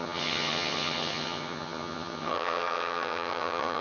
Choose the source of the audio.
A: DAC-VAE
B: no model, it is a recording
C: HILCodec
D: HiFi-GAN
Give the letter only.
D